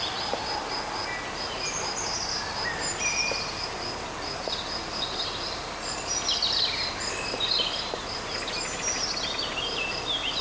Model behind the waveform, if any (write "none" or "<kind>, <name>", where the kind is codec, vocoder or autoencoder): none